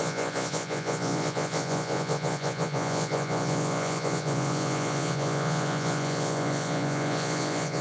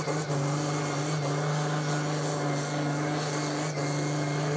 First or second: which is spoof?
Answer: first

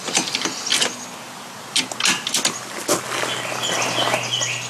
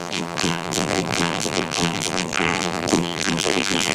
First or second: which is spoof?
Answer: second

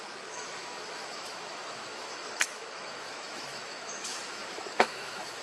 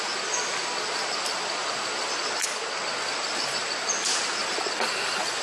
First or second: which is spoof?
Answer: first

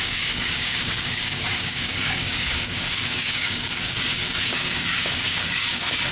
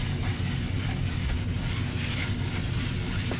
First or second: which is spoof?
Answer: first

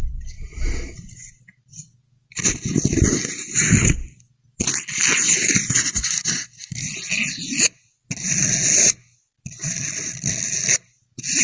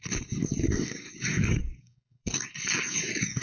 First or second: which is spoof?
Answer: second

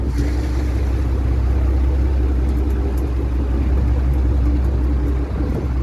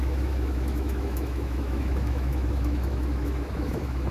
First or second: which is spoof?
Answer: second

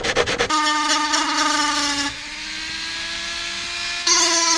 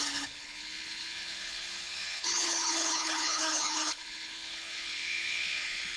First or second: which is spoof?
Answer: second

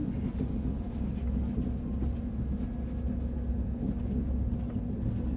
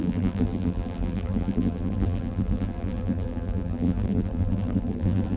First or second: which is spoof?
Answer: second